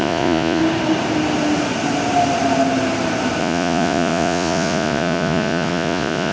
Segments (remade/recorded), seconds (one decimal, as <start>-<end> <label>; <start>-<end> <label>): 0.0-0.6 remade; 0.6-3.4 recorded; 3.4-6.3 remade